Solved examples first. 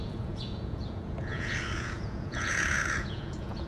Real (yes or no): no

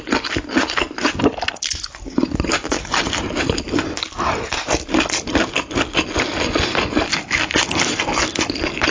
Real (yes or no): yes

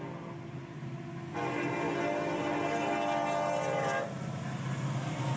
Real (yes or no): yes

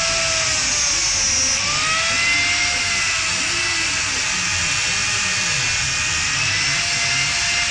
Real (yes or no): yes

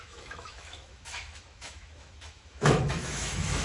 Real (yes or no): no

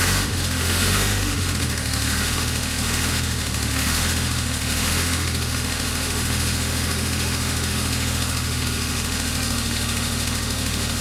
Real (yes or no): no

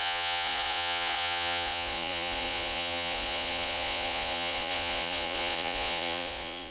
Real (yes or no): no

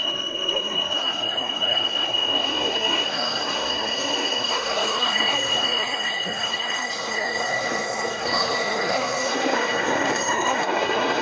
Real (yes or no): no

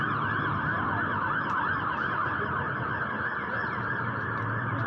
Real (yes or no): yes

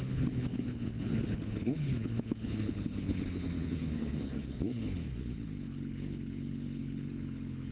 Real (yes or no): no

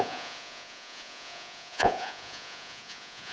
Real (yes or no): no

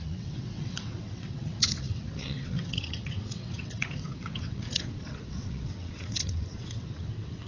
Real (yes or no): no